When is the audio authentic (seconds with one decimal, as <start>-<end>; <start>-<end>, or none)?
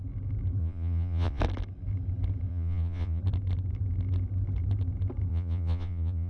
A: 0.0-0.6; 1.4-2.5; 3.2-5.3